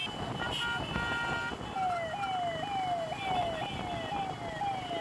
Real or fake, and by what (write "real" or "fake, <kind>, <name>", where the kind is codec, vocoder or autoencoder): real